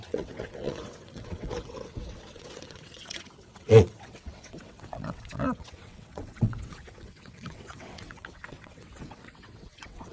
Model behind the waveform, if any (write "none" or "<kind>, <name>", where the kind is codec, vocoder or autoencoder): vocoder, WaveNeXt